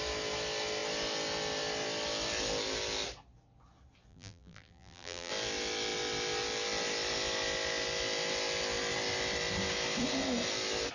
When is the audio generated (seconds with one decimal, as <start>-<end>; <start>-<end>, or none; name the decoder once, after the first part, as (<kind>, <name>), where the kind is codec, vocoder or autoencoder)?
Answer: 4.1-5.3 (vocoder, BigVGAN v2)